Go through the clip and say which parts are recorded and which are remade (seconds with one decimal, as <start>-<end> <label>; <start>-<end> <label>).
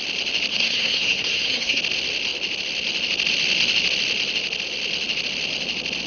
0.0-0.5 recorded; 0.5-1.8 remade; 1.8-6.1 recorded